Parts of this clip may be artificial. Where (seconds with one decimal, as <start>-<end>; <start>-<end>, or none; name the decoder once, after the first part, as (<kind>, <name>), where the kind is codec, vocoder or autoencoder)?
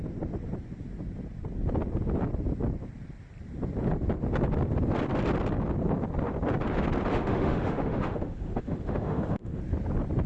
7.1-9.6 (autoencoder, DAC-VAE)